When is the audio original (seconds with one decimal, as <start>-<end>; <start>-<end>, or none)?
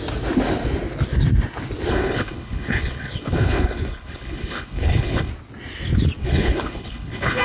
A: 0.0-1.9; 5.3-6.2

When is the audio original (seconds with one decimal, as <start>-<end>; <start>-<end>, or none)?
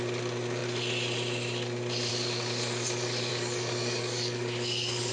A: 0.0-3.3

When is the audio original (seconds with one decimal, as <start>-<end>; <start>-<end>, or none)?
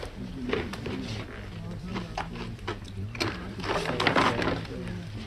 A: 0.0-5.3